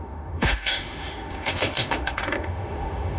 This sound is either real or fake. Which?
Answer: fake